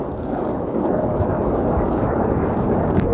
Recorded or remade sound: remade